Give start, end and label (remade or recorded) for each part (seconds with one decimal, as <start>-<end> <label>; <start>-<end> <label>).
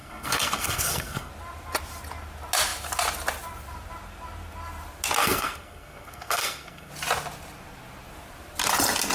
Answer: 0.0-1.3 remade; 1.3-5.2 recorded; 5.2-6.9 remade; 6.9-9.1 recorded